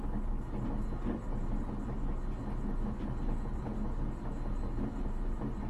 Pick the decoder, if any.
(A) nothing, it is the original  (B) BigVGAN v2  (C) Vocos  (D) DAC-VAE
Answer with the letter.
A